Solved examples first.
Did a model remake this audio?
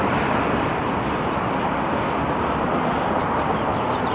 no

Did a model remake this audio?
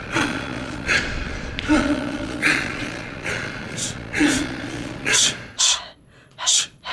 yes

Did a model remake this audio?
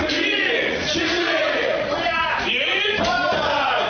yes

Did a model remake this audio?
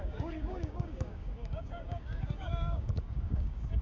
yes